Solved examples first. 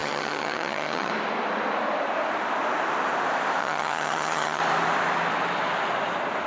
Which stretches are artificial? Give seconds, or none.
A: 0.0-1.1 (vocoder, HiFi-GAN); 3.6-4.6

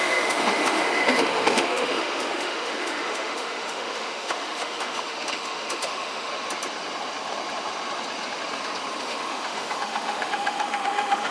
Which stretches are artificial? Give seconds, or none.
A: 0.0-6.3 (autoencoder, DAC-VAE); 9.0-11.3